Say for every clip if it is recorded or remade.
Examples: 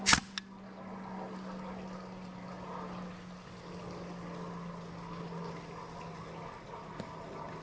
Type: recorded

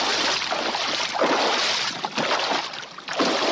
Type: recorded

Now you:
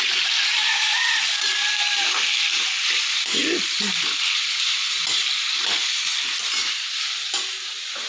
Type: recorded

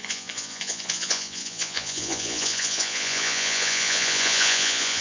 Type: remade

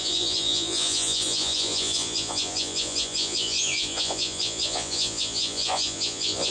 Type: remade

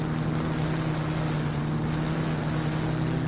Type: recorded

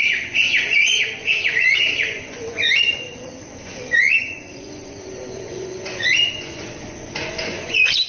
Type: remade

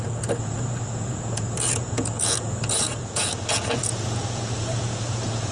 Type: remade